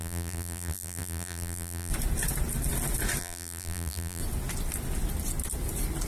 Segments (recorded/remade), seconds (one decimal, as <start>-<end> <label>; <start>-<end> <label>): 0.0-1.9 remade; 1.9-3.2 recorded; 3.2-4.2 remade; 4.2-6.1 recorded